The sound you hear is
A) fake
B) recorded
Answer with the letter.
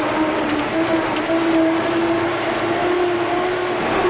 B